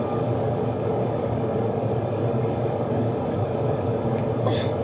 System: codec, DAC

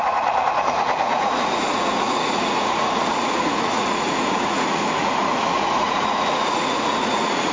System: vocoder, Vocos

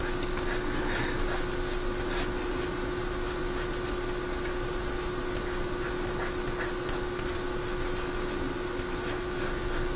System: none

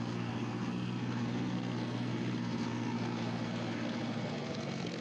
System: codec, SNAC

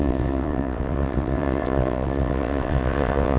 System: vocoder, WaveNeXt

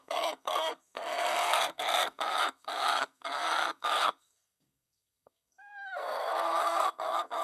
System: codec, SNAC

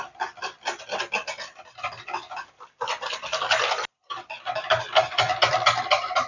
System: none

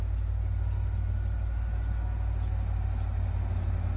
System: none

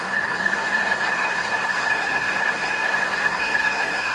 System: codec, SNAC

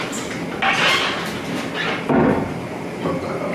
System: none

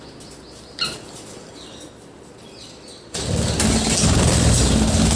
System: none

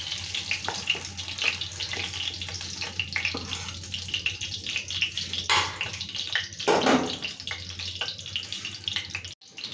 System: none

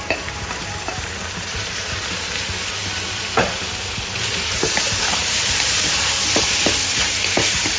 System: vocoder, BigVGAN v2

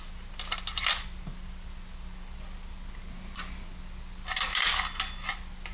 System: none